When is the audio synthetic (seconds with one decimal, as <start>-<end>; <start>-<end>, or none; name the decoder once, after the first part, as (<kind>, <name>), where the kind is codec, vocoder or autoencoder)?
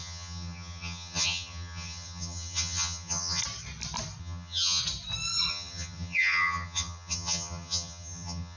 0.0-3.4 (vocoder, HiFi-GAN); 4.2-4.8; 5.5-8.6